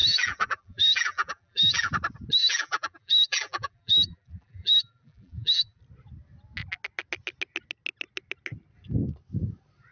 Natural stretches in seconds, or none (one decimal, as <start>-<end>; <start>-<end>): 1.9-2.4; 5.8-9.9